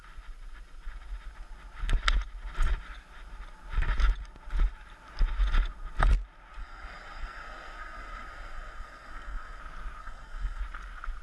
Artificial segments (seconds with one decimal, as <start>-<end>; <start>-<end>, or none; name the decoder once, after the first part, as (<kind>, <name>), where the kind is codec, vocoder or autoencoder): 6.6-9.6 (codec, SNAC); 10.0-10.6